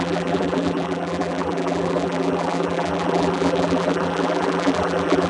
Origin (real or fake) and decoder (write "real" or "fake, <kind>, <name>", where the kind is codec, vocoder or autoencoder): fake, vocoder, BigVGAN v2